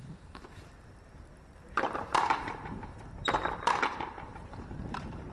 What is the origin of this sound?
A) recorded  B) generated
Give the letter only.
B